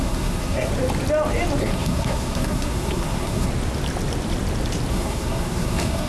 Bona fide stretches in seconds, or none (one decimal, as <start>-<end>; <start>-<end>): 0.7-1.6; 3.5-4.9